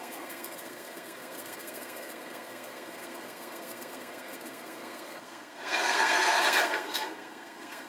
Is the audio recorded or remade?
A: remade